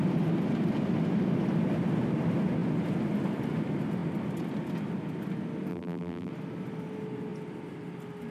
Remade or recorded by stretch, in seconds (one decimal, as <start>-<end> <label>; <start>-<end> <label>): 0.0-5.7 recorded; 5.7-6.3 remade; 6.3-8.3 recorded

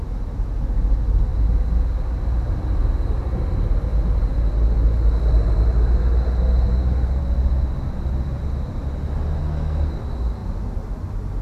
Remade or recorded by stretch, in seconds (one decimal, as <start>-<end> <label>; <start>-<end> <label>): 0.0-6.7 recorded; 6.7-7.2 remade; 7.2-9.4 recorded; 9.4-10.0 remade; 10.0-11.4 recorded